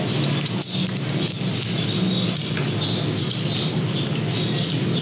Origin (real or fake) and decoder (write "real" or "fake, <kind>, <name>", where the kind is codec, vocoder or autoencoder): real